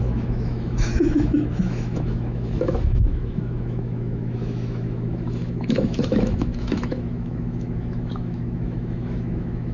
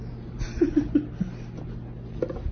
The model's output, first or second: first